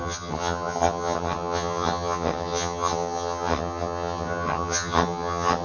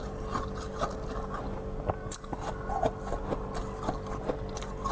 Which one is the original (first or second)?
second